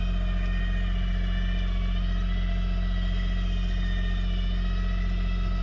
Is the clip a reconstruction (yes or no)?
no